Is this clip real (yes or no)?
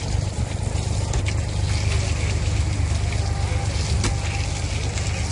yes